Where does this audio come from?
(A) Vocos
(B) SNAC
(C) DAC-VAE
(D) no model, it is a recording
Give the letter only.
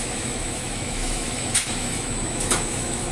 C